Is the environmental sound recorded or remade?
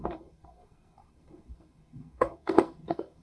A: remade